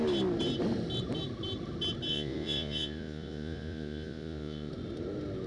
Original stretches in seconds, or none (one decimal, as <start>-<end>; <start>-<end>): 0.0-2.1; 4.7-5.5